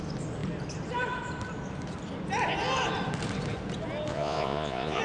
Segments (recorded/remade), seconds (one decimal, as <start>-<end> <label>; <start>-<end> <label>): 0.0-4.1 recorded; 4.1-5.0 remade